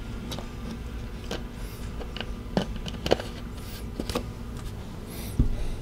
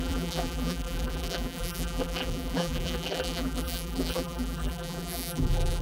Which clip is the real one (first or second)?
first